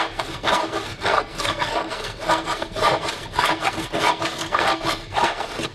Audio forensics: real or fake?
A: fake